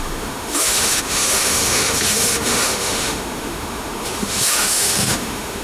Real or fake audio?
fake